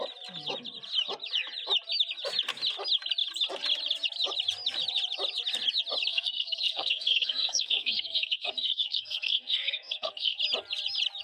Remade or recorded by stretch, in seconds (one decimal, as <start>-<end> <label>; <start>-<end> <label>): 0.0-6.1 recorded; 6.1-10.4 remade; 10.4-11.2 recorded